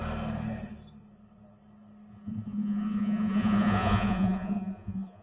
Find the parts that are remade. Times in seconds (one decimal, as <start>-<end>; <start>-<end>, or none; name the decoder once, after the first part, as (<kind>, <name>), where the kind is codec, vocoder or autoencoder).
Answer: 2.1-5.2 (vocoder, Vocos)